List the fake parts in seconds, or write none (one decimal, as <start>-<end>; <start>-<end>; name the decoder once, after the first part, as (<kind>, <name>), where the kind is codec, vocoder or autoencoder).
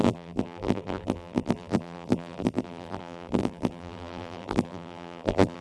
0.0-5.6 (vocoder, BigVGAN v2)